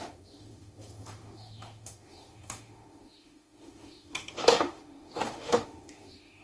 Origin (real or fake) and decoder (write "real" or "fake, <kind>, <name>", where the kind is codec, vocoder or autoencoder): fake, autoencoder, DAC-VAE